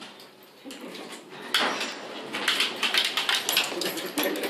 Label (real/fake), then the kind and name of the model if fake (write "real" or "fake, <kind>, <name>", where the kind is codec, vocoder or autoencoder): real